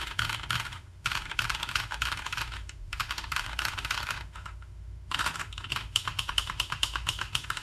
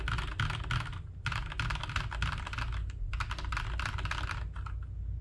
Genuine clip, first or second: second